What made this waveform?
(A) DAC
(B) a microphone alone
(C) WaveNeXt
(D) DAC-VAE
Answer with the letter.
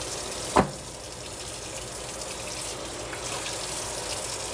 B